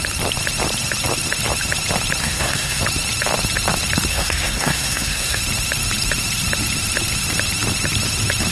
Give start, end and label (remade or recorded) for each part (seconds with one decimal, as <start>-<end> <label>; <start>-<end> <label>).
0.0-2.2 recorded; 2.2-2.8 remade; 2.8-4.1 recorded; 4.1-5.4 remade; 5.4-8.5 recorded